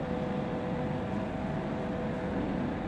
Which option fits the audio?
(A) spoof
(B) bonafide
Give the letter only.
B